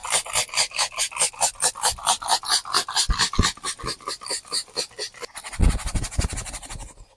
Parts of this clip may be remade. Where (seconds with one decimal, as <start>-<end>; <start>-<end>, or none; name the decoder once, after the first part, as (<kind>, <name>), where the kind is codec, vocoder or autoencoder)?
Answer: none